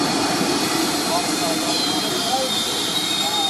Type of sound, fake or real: fake